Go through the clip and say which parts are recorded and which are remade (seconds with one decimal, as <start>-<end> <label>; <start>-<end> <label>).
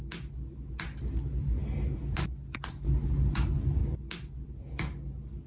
0.0-5.5 recorded